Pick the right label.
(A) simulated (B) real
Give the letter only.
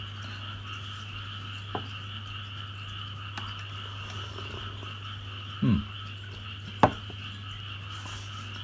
B